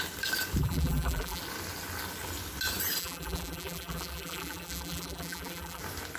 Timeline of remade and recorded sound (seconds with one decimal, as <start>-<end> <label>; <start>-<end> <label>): 0.0-0.6 recorded; 0.6-1.4 remade; 1.4-3.0 recorded; 3.0-5.8 remade; 5.8-6.2 recorded